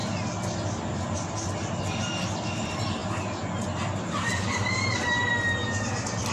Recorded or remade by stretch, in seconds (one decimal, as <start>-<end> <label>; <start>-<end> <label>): 0.0-6.3 recorded